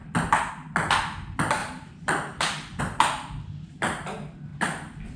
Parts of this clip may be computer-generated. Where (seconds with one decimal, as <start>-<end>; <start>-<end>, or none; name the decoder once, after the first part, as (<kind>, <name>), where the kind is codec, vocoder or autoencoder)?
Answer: 1.6-2.8 (vocoder, BigVGAN v2); 4.5-5.2